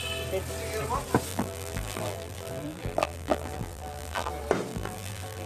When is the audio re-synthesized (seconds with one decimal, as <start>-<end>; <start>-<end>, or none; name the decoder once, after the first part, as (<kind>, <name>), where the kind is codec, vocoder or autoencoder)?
1.3-4.3 (vocoder, BigVGAN v2); 4.7-5.5